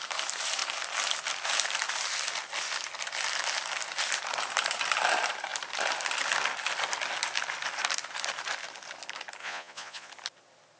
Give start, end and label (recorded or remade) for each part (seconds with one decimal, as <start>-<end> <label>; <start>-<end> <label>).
0.0-9.4 recorded; 9.4-10.1 remade; 10.1-10.8 recorded